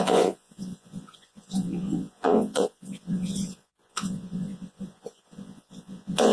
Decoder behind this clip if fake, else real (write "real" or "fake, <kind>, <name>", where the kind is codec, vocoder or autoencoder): fake, vocoder, Vocos